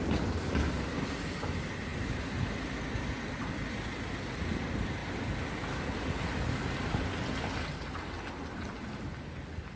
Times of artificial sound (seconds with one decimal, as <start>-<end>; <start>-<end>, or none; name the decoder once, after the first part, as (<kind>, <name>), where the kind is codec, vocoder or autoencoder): none